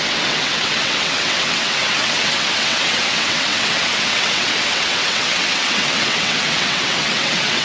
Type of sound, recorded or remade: remade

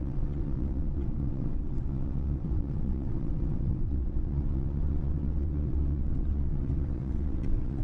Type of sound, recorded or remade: remade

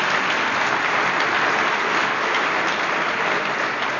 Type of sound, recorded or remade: recorded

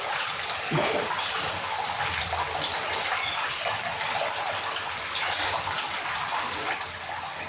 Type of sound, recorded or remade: recorded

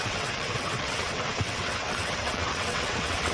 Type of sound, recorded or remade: remade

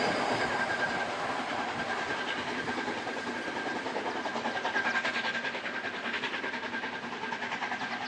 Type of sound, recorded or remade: recorded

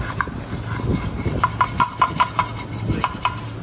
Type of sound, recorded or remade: recorded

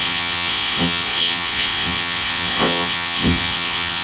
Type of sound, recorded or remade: remade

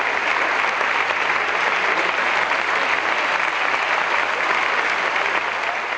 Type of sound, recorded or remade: recorded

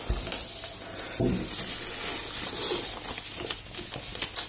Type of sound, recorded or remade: recorded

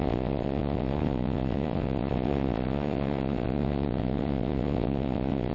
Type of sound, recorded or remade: remade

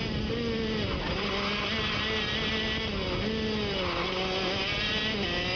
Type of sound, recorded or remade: recorded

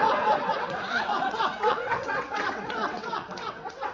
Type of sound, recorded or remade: remade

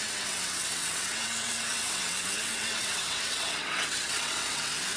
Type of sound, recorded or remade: remade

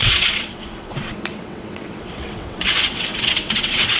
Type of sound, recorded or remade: remade